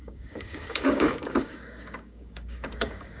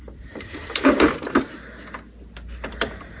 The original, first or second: second